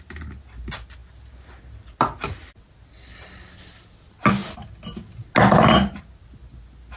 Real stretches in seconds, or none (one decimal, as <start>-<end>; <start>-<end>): 0.0-7.0